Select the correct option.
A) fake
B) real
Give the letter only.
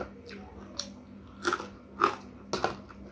B